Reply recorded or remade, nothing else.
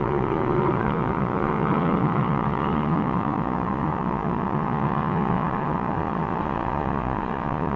remade